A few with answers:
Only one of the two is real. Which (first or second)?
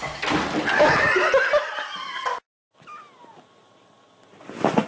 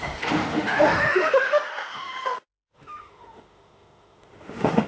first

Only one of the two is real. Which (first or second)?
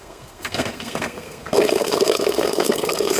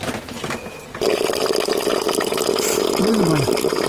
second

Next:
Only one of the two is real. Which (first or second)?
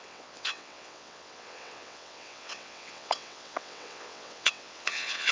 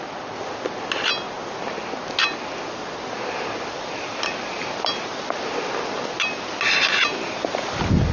second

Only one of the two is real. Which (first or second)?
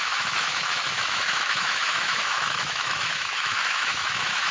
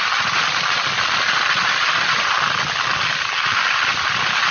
second